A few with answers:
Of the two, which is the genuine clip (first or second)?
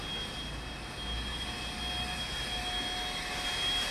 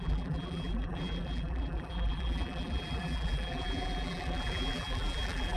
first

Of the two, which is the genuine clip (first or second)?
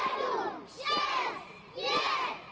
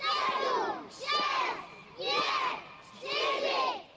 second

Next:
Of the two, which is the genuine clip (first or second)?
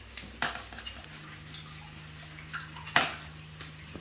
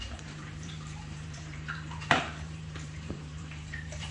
first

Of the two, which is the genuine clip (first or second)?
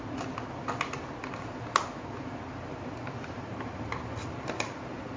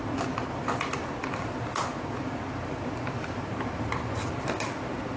first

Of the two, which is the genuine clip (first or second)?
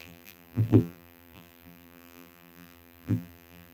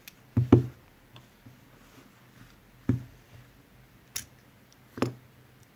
second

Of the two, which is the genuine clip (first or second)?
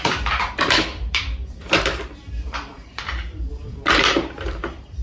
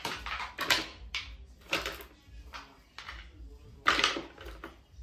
second